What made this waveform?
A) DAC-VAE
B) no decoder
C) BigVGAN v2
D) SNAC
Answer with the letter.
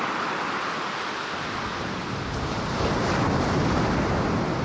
B